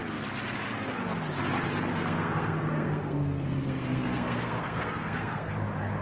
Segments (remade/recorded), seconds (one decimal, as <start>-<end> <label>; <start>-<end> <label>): 0.0-1.9 recorded; 1.9-5.5 remade; 5.5-6.0 recorded